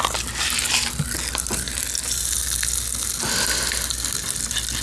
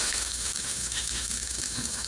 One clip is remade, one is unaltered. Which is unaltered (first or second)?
first